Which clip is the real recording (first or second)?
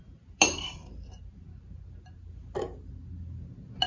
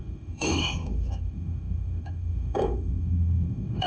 first